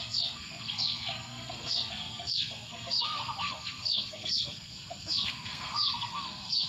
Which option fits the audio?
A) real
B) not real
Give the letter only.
B